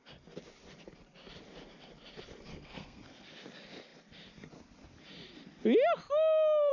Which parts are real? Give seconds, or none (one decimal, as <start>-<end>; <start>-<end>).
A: 0.0-2.5; 3.0-6.7

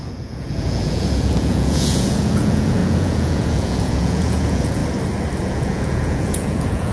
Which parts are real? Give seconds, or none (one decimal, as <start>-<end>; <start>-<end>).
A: 4.8-5.4

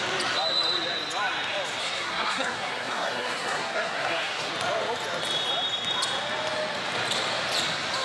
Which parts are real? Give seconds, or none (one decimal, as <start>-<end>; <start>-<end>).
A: 0.0-1.8; 4.5-8.0